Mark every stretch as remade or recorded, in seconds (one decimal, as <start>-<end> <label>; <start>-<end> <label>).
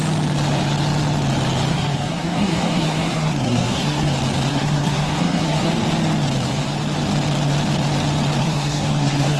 0.0-1.7 recorded; 1.7-4.1 remade; 4.1-4.5 recorded; 4.5-5.7 remade; 5.7-8.4 recorded; 8.4-9.4 remade